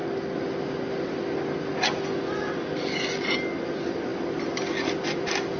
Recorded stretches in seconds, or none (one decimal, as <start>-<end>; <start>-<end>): 0.0-5.6